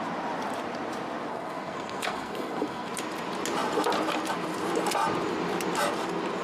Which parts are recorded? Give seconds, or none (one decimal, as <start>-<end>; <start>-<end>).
0.0-1.3; 2.9-6.4